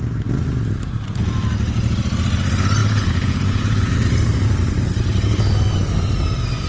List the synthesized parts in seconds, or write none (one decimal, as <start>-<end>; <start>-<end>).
2.8-3.9